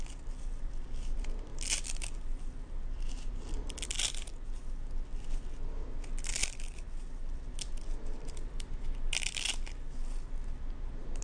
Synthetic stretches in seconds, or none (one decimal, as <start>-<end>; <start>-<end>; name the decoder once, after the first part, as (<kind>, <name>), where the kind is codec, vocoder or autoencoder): none